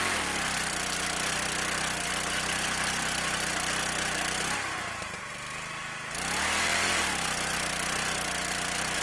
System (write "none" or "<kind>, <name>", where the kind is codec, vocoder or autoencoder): none